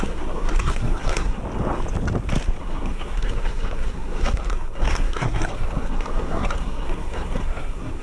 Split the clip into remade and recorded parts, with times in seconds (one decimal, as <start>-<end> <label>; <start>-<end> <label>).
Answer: 0.0-1.4 remade; 1.4-2.6 recorded; 2.6-8.0 remade